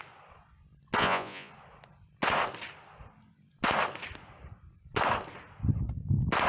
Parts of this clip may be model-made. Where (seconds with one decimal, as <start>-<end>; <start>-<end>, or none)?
1.0-1.5